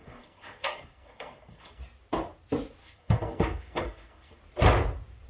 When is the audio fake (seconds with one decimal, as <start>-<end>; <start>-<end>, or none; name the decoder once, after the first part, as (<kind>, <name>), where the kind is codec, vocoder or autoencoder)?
0.0-1.8 (codec, SNAC); 2.8-4.4

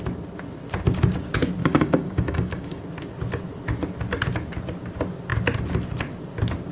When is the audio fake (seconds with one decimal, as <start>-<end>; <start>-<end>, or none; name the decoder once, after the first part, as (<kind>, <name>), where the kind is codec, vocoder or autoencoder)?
1.6-2.8 (codec, DAC)

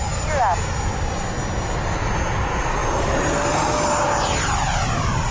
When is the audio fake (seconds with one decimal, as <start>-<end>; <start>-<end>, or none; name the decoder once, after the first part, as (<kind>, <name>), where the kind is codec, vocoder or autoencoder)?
none